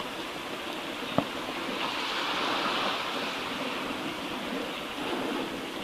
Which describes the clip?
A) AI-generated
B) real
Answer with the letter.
B